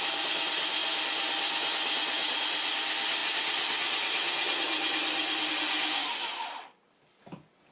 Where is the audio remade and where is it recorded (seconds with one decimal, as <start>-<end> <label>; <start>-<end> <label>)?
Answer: 0.0-7.7 recorded